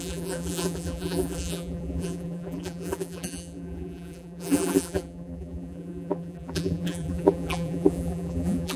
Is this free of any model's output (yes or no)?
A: no